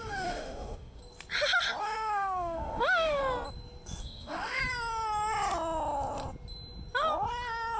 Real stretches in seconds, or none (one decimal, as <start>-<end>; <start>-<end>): 1.0-1.8; 3.2-4.0; 4.6-7.8